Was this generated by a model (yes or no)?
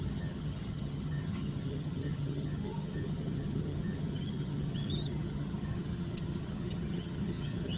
yes